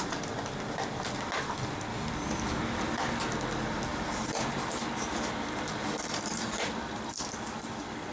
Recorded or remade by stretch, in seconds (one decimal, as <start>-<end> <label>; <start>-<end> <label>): 0.0-3.9 recorded; 3.9-4.8 remade; 4.8-5.8 recorded; 5.8-6.6 remade; 6.6-8.1 recorded